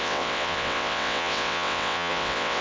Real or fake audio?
fake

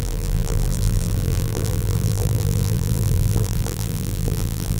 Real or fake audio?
fake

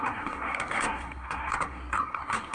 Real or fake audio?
fake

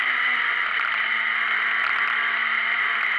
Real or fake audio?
fake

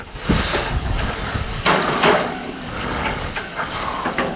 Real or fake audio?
fake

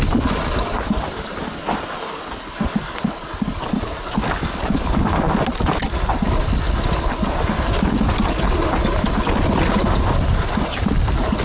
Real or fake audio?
real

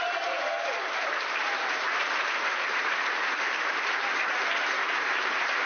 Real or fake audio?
fake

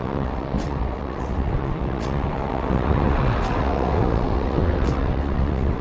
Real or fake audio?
fake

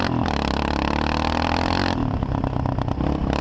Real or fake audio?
real